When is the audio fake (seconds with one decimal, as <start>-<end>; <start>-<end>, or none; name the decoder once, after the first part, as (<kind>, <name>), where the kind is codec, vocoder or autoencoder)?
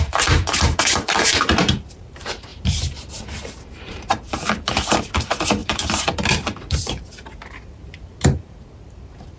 0.0-9.4 (vocoder, BigVGAN v2)